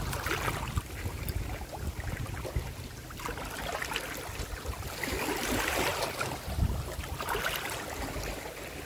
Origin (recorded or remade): recorded